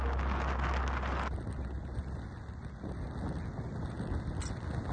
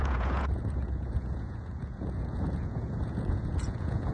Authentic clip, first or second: first